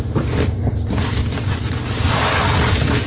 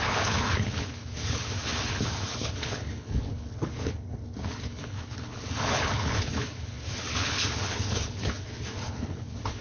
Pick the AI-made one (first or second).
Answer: second